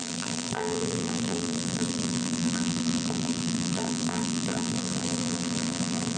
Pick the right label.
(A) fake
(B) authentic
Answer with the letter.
A